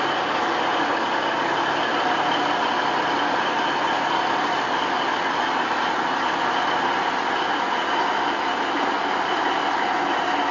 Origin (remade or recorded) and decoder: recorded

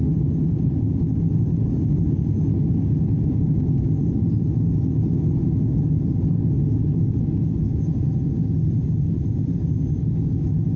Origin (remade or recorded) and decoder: recorded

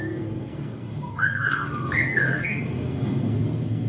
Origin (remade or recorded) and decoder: remade, codec, SNAC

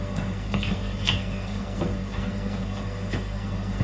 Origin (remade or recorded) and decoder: remade, codec, SNAC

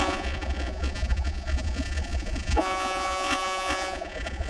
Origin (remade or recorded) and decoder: remade, vocoder, Vocos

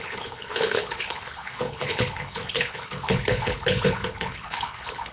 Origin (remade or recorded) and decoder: remade, codec, HILCodec